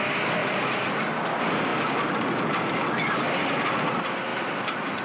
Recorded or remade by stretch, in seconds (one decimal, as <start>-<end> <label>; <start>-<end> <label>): 0.0-0.4 recorded; 0.4-1.1 remade; 1.1-4.3 recorded; 4.3-5.0 remade

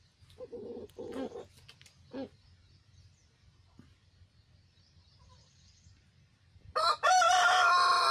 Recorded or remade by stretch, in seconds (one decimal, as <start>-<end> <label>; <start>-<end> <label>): 0.0-3.2 recorded; 3.2-8.1 remade

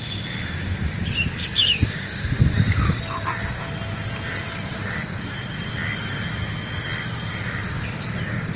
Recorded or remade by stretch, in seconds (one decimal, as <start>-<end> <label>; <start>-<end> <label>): 0.0-1.6 recorded; 1.6-3.0 remade; 3.0-8.6 recorded

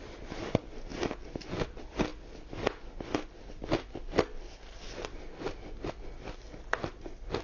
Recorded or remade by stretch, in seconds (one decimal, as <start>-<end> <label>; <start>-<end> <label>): 0.0-7.4 recorded

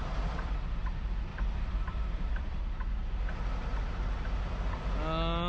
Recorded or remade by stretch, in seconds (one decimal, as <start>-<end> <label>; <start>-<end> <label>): 0.0-0.8 remade; 0.8-1.3 recorded; 1.3-2.6 remade; 2.6-5.5 recorded

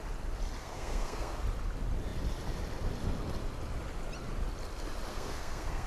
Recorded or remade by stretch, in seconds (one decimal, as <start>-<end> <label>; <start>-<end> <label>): 0.0-0.6 recorded; 0.6-1.4 remade; 1.4-5.1 recorded; 5.1-5.9 remade